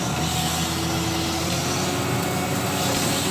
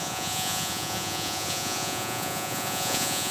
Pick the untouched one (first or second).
first